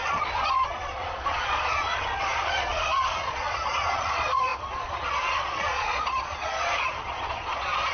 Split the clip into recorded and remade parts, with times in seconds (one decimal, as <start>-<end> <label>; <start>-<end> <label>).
0.0-7.9 remade